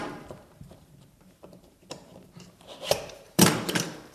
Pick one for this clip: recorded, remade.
remade